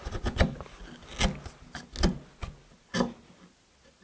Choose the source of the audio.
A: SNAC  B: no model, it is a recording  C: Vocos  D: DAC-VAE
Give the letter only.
B